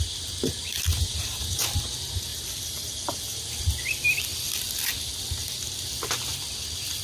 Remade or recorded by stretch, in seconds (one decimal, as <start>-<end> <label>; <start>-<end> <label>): 0.0-1.1 recorded; 1.1-1.6 remade; 1.6-2.3 recorded; 2.3-3.4 remade; 3.4-7.0 recorded

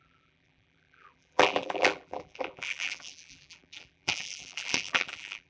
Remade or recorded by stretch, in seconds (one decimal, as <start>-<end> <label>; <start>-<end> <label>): 0.0-5.5 remade

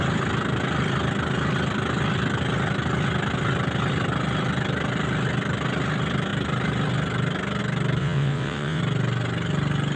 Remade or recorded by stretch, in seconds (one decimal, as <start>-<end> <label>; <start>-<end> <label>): 0.0-8.0 recorded; 8.0-8.8 remade; 8.8-10.0 recorded

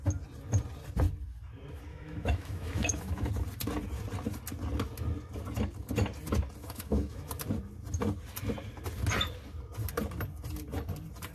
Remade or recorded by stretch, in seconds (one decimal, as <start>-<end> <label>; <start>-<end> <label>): 0.0-1.9 recorded; 1.9-3.3 remade; 3.3-6.6 recorded; 6.6-7.3 remade; 7.3-11.3 recorded

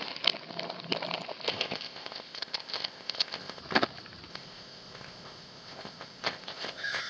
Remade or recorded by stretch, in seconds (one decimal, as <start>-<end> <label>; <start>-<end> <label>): 0.0-1.5 recorded; 1.5-3.6 remade; 3.6-4.3 recorded; 4.3-7.1 remade

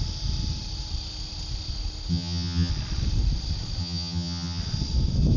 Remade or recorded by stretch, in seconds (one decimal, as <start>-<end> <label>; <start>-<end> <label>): 0.0-2.1 recorded; 2.1-2.7 remade; 2.7-3.8 recorded; 3.8-4.6 remade; 4.6-5.4 recorded